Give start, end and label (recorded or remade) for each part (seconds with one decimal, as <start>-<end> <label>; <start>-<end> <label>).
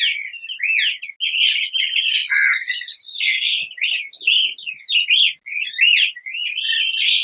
0.0-7.2 recorded